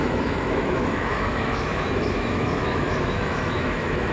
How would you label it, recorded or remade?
remade